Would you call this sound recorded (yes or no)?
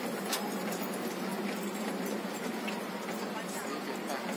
yes